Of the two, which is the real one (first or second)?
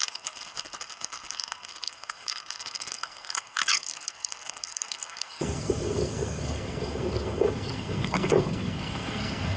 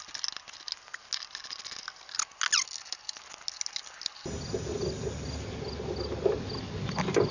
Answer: second